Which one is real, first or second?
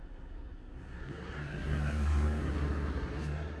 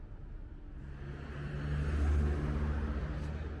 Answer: second